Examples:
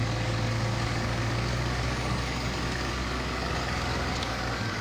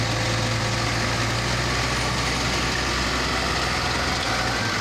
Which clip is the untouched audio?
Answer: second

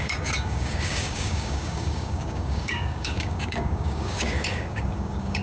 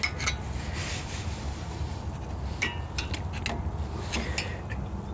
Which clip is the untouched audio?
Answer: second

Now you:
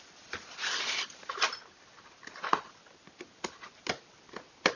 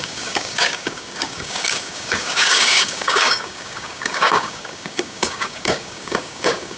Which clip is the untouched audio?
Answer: first